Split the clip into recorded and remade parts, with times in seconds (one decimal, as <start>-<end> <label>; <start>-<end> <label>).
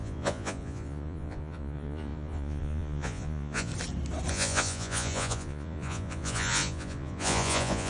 0.0-3.7 remade; 3.7-4.3 recorded; 4.3-7.9 remade